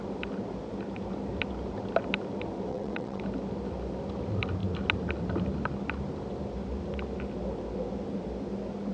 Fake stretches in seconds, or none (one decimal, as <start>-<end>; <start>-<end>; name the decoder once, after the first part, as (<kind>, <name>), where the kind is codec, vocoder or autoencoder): 2.7-3.2 (vocoder, WaveNeXt)